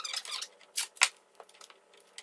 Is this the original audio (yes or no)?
yes